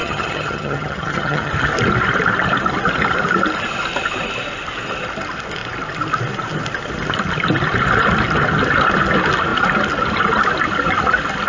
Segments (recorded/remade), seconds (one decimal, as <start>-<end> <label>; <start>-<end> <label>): 0.0-1.5 remade; 1.5-11.5 recorded